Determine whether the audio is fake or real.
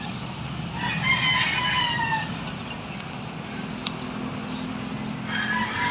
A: real